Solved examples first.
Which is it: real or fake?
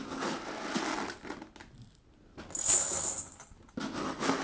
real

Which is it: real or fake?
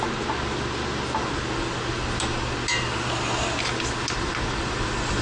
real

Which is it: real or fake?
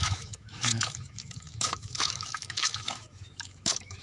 fake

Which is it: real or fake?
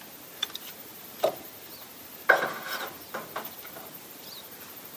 real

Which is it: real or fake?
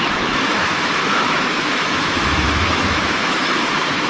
fake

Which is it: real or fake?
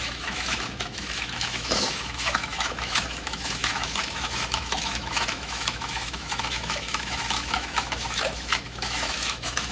fake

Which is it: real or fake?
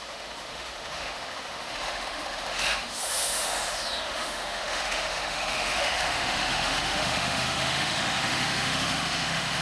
fake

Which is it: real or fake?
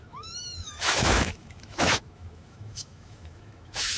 fake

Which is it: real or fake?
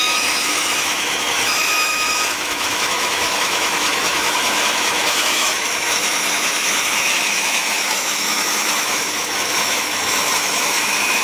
fake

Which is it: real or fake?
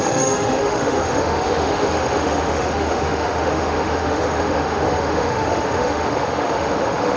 fake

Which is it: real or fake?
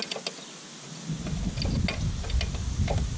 real